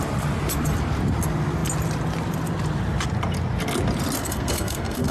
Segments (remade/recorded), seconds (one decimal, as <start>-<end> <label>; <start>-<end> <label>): 0.0-4.2 recorded; 4.2-5.1 remade